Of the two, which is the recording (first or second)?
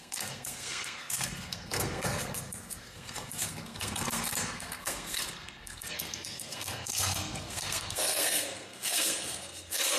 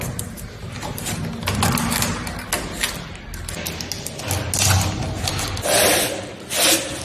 second